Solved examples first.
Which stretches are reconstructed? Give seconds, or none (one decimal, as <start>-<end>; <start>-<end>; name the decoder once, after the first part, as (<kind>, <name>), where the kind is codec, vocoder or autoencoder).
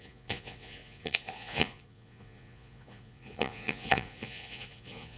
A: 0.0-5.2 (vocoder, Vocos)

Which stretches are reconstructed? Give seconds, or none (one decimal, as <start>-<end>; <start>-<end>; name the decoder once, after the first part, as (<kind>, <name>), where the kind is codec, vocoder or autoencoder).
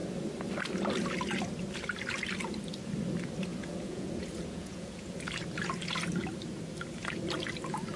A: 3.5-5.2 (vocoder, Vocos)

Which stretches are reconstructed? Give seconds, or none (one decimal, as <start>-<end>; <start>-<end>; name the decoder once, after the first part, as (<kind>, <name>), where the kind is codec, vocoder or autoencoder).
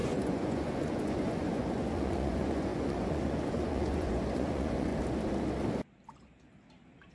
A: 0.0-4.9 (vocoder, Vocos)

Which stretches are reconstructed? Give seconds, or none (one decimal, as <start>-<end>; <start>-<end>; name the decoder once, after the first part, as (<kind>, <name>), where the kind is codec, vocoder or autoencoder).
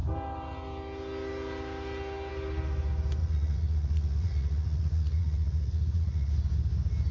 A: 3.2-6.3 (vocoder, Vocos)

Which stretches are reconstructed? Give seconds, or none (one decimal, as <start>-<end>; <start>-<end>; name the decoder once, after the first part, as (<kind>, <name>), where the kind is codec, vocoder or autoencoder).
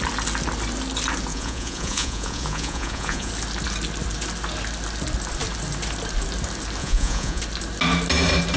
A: 1.3-3.3 (vocoder, Vocos); 6.8-7.4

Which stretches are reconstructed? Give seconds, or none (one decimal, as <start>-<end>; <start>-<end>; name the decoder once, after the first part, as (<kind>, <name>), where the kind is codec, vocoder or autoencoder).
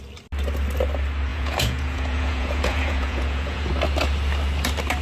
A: 1.3-3.7 (vocoder, Vocos)